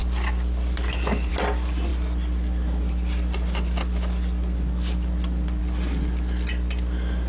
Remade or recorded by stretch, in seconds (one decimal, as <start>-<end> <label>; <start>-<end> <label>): 0.0-7.3 recorded